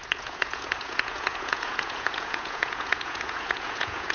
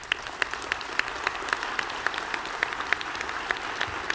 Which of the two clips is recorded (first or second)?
second